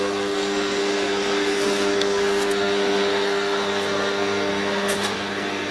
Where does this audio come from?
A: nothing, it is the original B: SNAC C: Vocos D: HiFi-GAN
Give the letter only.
B